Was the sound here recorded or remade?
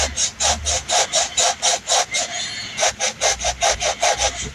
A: recorded